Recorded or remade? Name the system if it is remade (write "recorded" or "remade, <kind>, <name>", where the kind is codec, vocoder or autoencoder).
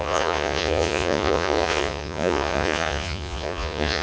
remade, vocoder, Vocos